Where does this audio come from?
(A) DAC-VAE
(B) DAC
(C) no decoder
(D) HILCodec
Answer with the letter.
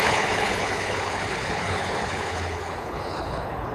D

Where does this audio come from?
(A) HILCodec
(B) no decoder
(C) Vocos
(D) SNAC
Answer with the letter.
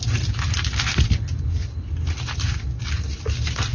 B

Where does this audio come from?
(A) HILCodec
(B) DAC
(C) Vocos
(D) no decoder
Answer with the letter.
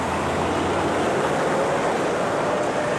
D